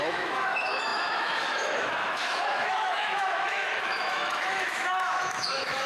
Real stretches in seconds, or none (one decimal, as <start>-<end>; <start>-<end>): none